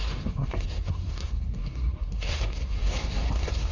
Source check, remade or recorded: remade